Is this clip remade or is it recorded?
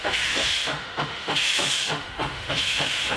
remade